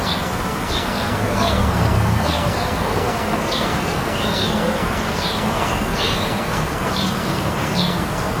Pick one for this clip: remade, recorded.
remade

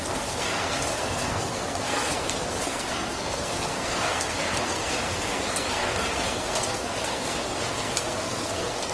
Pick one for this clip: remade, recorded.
remade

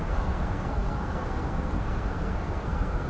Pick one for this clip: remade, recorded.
remade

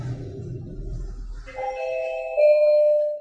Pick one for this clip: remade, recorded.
recorded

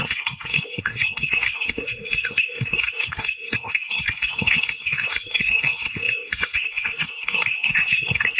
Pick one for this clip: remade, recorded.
remade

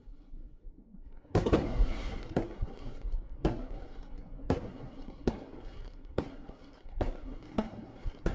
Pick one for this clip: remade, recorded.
remade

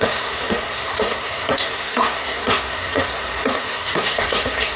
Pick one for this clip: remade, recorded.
remade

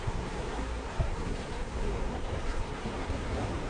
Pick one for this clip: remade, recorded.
remade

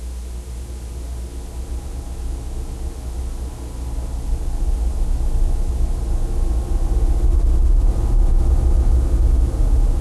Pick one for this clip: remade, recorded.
recorded